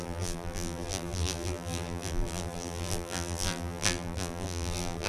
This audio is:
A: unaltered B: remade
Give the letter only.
B